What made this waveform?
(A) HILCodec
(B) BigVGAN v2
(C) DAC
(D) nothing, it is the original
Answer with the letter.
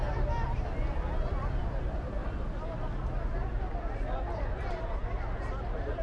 D